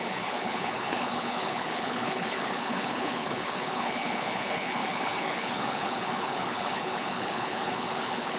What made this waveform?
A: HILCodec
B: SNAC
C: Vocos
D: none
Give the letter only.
A